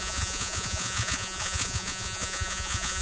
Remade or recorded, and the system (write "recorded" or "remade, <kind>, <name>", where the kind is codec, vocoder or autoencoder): remade, vocoder, Vocos